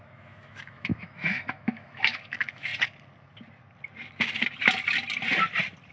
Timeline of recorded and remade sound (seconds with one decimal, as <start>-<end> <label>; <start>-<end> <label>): 0.0-2.7 remade; 2.7-5.9 recorded